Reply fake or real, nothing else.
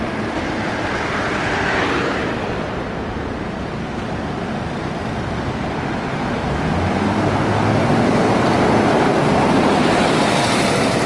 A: fake